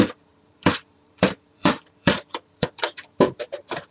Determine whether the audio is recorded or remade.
remade